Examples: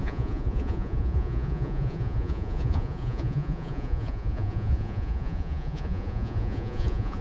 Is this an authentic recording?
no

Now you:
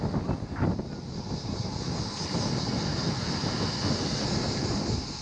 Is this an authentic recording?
yes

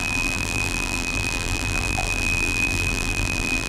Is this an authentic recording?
no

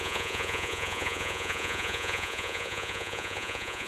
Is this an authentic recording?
no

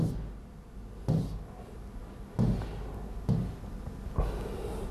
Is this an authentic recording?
yes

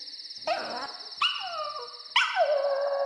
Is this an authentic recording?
yes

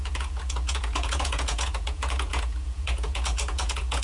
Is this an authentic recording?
no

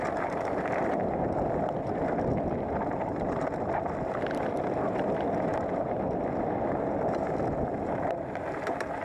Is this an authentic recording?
yes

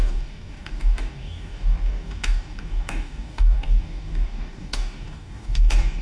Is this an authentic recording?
no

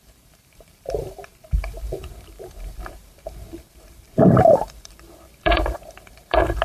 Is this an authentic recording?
no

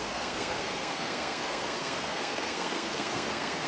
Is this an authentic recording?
no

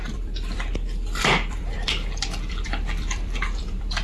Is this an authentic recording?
no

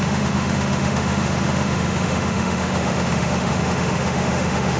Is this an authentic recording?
no